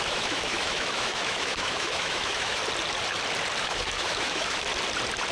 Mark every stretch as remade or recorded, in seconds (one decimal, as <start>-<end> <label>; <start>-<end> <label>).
0.0-2.6 remade; 2.6-3.6 recorded; 3.6-4.7 remade; 4.7-5.3 recorded